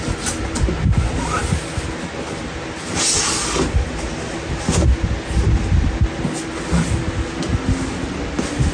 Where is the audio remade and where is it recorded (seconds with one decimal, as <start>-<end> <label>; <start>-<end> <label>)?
0.0-8.7 recorded